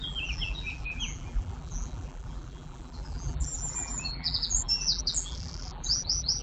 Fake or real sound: fake